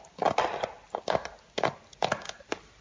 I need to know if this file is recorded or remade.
recorded